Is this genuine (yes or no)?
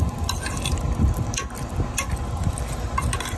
yes